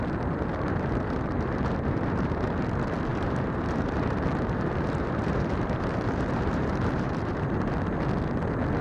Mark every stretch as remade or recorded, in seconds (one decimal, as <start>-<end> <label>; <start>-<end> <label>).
0.0-0.5 recorded; 0.5-2.5 remade; 2.5-3.1 recorded; 3.1-7.7 remade; 7.7-8.8 recorded